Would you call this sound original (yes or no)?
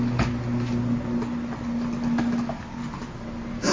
yes